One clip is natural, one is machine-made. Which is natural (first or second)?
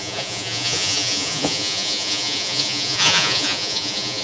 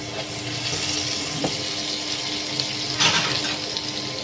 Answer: second